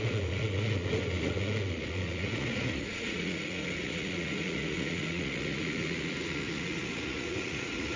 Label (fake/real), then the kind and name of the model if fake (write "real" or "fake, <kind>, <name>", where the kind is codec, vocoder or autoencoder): fake, vocoder, Vocos